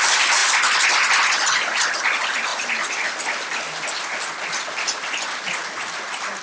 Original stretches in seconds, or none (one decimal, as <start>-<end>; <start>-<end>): 0.0-6.4